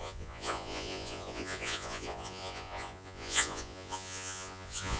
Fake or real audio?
fake